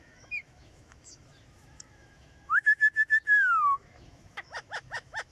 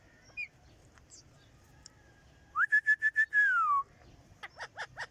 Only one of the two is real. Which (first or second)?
second